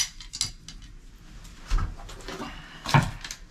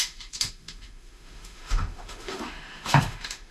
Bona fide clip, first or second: first